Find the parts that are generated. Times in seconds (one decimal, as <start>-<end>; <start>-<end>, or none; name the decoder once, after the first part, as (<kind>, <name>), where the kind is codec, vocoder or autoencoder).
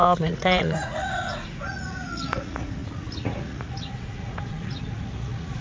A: 0.0-5.6 (vocoder, Vocos)